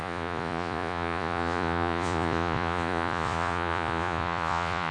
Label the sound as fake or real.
fake